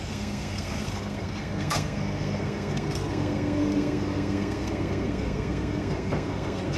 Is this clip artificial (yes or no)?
yes